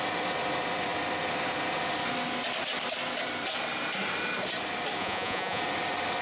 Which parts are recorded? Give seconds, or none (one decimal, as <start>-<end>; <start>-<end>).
0.0-5.0; 5.6-6.2